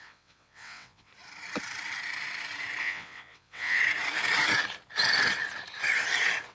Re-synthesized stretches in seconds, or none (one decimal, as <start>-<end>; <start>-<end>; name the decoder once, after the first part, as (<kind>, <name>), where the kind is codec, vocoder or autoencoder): 0.0-1.1 (vocoder, WaveNeXt); 2.8-3.8